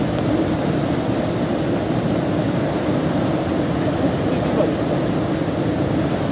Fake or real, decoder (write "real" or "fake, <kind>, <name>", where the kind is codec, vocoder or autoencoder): real